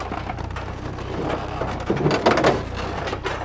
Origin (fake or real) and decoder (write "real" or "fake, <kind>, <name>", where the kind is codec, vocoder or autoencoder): real